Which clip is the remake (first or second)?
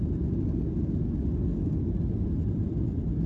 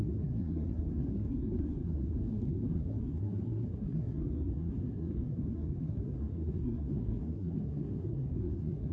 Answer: second